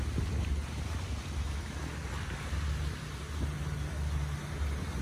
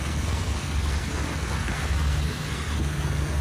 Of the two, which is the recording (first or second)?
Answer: first